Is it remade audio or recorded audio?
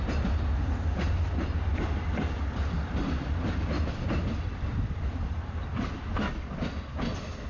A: recorded